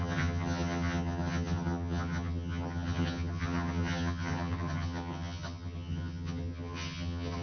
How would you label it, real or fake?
fake